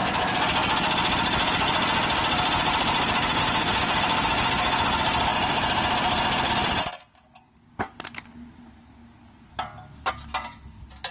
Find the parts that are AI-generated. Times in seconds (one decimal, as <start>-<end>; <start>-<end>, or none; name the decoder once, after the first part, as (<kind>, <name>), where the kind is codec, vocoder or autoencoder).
none